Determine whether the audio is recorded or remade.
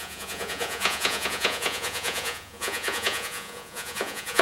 remade